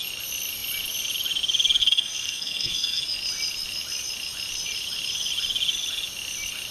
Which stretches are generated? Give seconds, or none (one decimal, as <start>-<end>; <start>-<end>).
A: 1.8-3.0